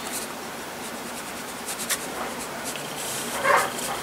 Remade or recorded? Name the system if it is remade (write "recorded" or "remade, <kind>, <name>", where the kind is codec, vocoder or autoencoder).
remade, vocoder, BigVGAN v2